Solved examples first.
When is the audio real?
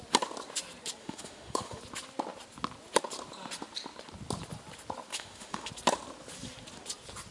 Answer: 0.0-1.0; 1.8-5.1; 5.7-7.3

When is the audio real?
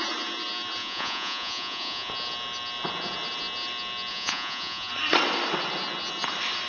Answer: 0.0-0.8; 2.1-4.1; 4.9-6.7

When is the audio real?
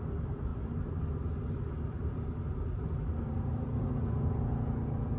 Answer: 0.0-5.2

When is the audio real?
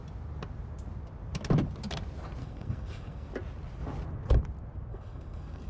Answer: 0.0-2.4; 3.3-4.9